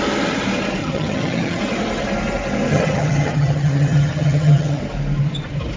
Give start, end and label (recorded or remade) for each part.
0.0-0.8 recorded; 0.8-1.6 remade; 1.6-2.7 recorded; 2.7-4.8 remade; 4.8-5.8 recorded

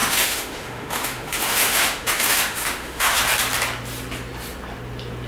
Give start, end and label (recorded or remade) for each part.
0.0-3.2 remade; 3.2-5.3 recorded

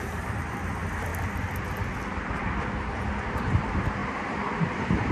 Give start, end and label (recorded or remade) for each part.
0.0-1.1 remade; 1.1-3.3 recorded; 3.3-4.0 remade; 4.0-4.6 recorded; 4.6-5.1 remade

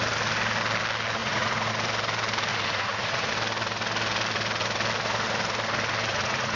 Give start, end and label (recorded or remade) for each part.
0.0-1.2 recorded; 1.2-1.7 remade; 1.7-2.5 recorded; 2.5-3.3 remade; 3.3-6.1 recorded; 6.1-6.6 remade